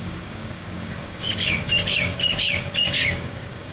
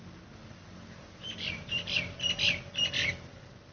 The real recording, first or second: second